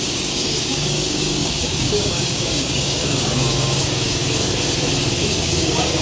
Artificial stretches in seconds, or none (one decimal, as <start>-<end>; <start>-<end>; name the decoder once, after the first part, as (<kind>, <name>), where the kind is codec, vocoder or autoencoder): 0.0-4.2 (codec, DAC); 5.3-6.0